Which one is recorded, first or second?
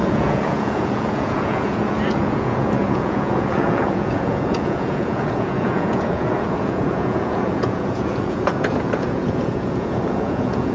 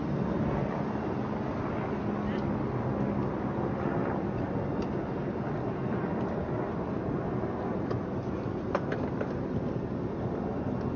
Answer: second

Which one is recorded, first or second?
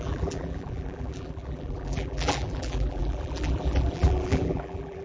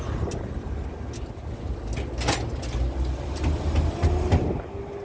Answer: second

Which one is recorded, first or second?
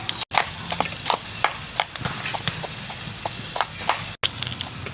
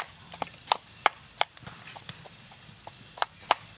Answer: first